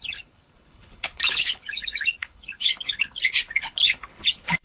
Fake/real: fake